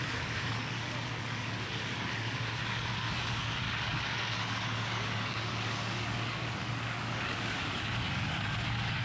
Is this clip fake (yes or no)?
yes